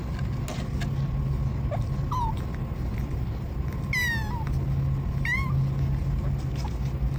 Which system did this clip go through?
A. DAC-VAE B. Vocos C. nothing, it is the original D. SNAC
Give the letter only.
C